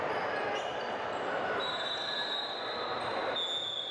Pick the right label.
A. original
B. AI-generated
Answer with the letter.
A